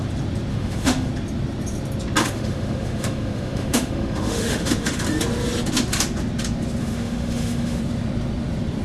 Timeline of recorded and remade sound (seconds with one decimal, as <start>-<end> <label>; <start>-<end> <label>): 0.0-0.5 recorded; 0.5-1.1 remade; 1.1-2.2 recorded; 2.2-5.0 remade; 5.0-6.8 recorded; 6.8-7.8 remade; 7.8-8.8 recorded